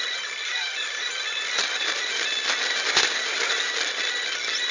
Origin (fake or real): real